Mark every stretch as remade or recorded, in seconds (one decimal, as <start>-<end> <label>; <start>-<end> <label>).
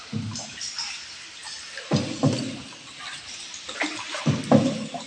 0.0-5.1 recorded